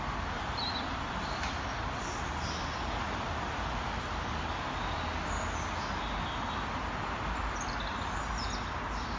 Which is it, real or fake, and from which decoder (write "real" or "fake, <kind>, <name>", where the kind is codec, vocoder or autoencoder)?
real